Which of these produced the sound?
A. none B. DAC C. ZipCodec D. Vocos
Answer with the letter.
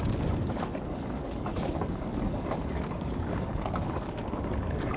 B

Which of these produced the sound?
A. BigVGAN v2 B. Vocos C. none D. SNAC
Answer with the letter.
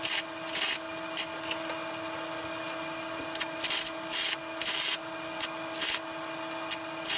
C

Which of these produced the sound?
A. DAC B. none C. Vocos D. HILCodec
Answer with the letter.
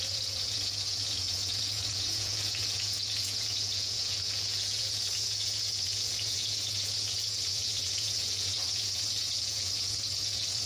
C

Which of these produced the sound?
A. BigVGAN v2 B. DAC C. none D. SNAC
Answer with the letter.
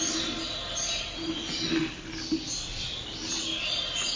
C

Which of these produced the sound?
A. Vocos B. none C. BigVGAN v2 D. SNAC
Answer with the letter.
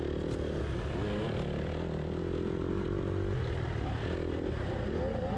B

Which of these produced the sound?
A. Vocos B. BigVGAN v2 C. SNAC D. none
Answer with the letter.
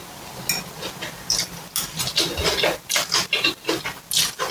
D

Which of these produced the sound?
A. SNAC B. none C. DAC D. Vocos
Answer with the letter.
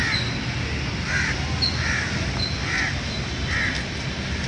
B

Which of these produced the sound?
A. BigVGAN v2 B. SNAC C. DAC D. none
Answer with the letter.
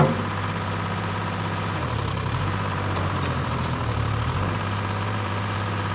A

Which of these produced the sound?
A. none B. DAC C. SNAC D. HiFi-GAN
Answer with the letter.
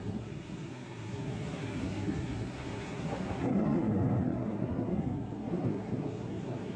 C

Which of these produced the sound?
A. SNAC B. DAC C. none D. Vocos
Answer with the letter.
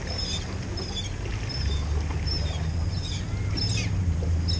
C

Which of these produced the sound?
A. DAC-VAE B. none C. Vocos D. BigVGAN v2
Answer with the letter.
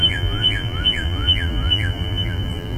D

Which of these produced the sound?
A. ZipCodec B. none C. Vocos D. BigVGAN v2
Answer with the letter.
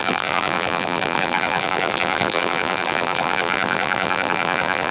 D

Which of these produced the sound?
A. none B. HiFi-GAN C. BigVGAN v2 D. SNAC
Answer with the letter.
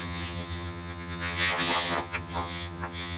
B